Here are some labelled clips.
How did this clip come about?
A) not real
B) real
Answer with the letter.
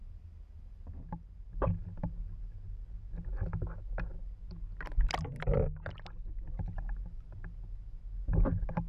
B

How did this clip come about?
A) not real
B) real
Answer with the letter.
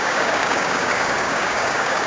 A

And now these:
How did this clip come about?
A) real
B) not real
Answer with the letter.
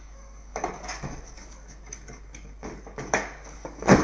B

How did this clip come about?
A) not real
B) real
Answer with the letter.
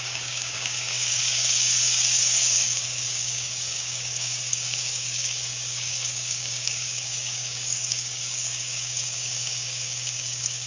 A